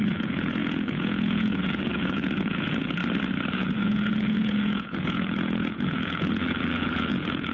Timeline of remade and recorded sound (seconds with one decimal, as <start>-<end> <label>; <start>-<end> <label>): 0.0-3.0 remade; 3.0-3.5 recorded; 3.5-7.5 remade